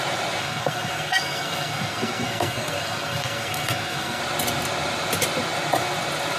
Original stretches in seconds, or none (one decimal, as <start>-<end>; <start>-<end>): 0.0-0.4; 4.2-6.4